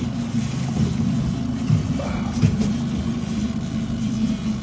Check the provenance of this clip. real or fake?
real